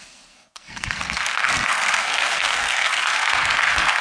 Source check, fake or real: fake